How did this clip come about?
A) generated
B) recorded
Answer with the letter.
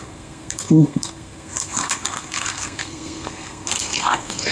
A